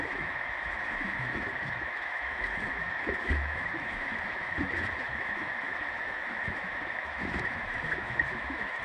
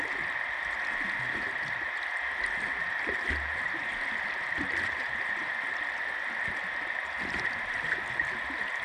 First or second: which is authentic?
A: second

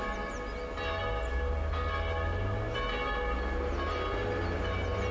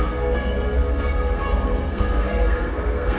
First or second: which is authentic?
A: first